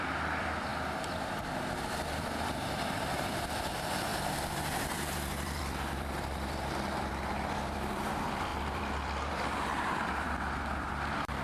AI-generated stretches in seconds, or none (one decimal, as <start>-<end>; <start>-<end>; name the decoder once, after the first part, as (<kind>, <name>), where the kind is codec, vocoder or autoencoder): 0.0-0.7 (vocoder, BigVGAN v2); 1.9-11.4